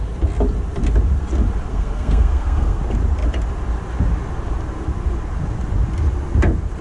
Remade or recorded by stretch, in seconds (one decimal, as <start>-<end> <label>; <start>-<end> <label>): 0.0-1.7 recorded; 1.7-2.8 remade; 2.8-6.8 recorded